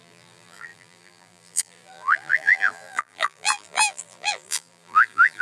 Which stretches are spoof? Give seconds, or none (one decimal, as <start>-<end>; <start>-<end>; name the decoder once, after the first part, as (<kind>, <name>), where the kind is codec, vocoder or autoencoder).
0.0-5.4 (vocoder, BigVGAN v2)